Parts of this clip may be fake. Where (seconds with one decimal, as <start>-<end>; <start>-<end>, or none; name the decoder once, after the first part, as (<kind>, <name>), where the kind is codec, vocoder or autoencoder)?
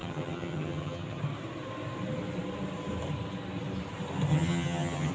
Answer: 0.0-1.2 (vocoder, HiFi-GAN); 4.3-5.1